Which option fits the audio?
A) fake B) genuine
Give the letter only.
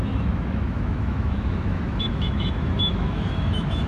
A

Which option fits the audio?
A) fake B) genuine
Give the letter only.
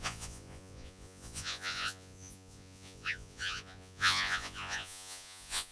A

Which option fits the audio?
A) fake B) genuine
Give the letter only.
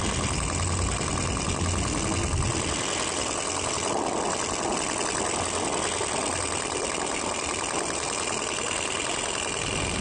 B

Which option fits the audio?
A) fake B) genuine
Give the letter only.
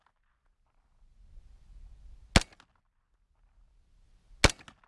B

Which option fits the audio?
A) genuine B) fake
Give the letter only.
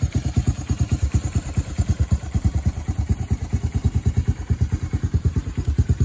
B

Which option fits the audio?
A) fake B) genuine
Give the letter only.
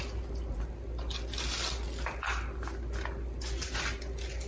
B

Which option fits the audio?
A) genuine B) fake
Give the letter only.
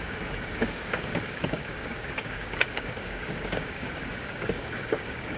B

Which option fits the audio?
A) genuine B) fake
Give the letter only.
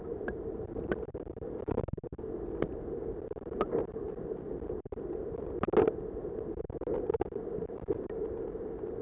A